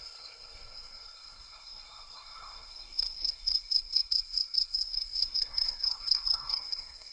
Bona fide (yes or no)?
no